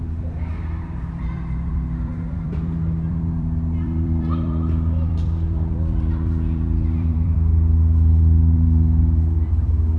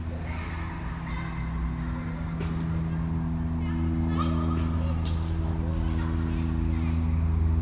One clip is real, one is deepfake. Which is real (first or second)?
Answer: second